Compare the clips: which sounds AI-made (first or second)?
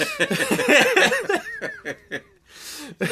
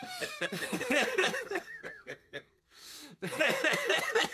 second